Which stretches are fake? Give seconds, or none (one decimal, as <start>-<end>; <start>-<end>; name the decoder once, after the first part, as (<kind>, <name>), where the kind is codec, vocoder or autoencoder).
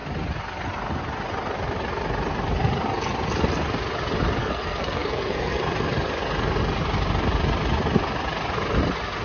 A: 4.4-5.6 (codec, SNAC)